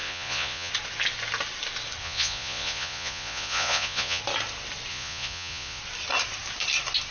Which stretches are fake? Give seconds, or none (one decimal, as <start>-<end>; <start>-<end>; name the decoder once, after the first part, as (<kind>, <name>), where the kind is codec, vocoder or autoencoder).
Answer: 0.0-0.7 (vocoder, Vocos); 2.0-4.2; 4.9-5.8